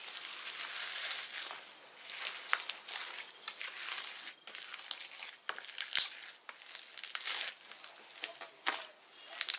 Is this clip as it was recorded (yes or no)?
yes